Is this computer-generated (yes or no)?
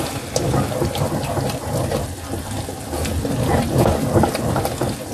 no